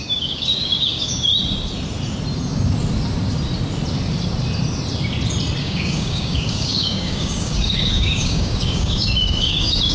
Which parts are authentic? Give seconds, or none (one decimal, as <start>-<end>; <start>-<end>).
1.3-5.6